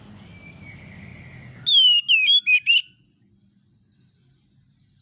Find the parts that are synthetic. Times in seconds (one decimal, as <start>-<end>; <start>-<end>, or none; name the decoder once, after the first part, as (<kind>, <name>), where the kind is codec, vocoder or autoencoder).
none